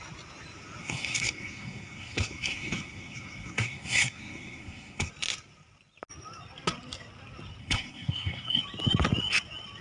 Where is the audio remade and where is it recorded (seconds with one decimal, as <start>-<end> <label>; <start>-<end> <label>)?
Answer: 0.0-0.8 recorded; 0.8-5.1 remade; 5.1-7.6 recorded; 7.6-8.6 remade; 8.6-9.8 recorded